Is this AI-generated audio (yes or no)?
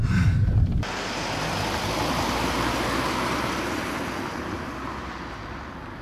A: no